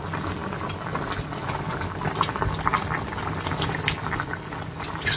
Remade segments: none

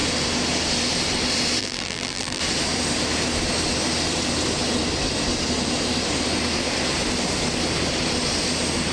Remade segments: 1.6-2.4 (vocoder, BigVGAN v2)

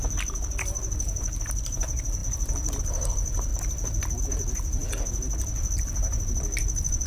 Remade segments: 0.0-3.5 (vocoder, BigVGAN v2); 4.2-7.1

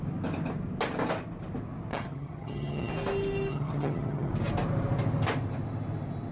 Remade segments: 1.9-2.9 (vocoder, HiFi-GAN); 3.5-4.3

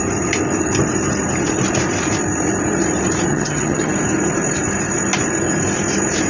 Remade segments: 3.3-3.9 (vocoder, HiFi-GAN)

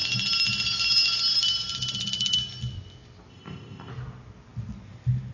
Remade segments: 3.3-3.9 (codec, ZipCodec)

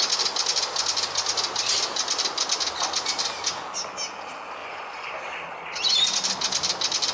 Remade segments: 4.6-5.1 (vocoder, Vocos)

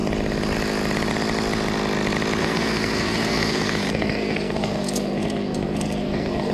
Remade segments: 2.4-6.5 (codec, SNAC)